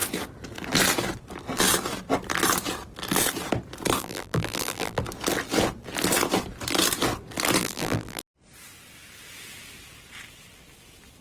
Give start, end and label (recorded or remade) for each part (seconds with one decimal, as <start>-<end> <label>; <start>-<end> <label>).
0.0-4.0 recorded; 4.0-5.0 remade; 5.0-7.6 recorded; 7.6-8.2 remade; 8.2-11.2 recorded